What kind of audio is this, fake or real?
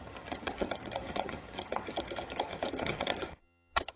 fake